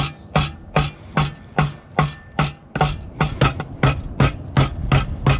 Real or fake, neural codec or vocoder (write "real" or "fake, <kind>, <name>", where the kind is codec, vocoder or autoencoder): real